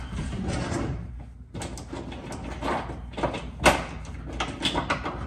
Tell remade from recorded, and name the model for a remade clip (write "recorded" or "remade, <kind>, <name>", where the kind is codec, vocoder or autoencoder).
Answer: recorded